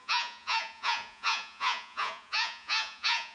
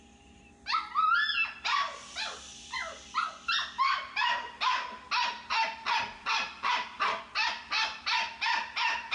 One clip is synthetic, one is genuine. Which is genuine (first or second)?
second